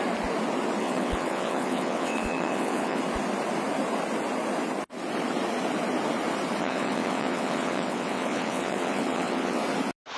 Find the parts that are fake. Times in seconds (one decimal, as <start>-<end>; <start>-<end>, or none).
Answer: 0.8-3.0; 6.6-9.6